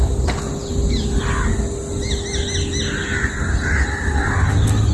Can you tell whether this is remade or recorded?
recorded